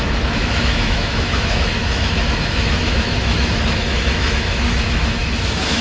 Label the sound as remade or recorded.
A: remade